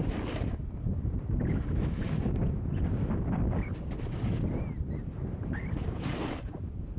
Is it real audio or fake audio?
fake